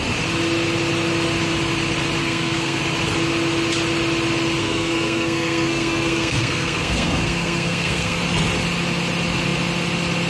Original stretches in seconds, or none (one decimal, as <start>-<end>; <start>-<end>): 0.0-2.2; 2.8-4.6; 8.2-10.3